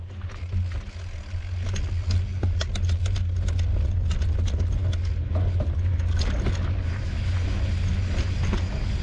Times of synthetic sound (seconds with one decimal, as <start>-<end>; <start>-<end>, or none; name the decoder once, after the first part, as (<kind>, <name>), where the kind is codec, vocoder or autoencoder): none

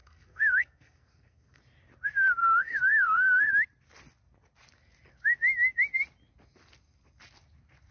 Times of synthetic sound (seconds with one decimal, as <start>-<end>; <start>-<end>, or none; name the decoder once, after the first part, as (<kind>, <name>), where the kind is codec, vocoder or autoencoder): 0.0-1.6 (codec, SNAC); 2.4-3.5

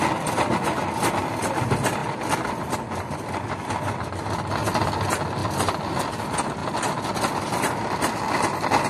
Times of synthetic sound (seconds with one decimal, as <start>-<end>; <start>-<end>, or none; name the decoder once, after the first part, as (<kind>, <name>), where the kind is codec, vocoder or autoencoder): none

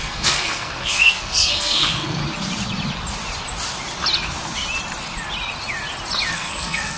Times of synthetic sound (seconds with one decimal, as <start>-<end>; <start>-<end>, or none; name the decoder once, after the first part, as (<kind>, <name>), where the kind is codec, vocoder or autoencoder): 0.0-2.2 (codec, SNAC); 6.3-7.0

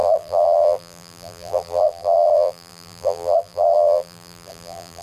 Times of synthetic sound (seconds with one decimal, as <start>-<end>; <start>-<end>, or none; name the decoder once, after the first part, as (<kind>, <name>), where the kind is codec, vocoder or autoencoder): 0.0-5.0 (vocoder, BigVGAN v2)